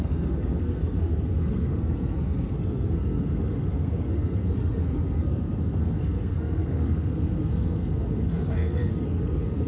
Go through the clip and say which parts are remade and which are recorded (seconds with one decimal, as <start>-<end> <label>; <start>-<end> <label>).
0.0-9.7 remade